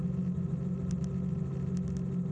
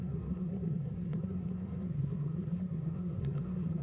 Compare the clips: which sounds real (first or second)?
first